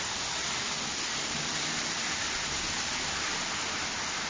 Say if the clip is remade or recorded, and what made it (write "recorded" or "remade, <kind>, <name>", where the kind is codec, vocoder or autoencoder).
recorded